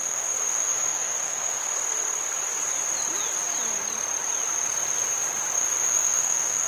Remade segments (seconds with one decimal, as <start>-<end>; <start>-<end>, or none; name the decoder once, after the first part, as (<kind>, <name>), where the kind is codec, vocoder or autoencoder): 0.0-1.6 (autoencoder, DAC-VAE); 5.6-6.7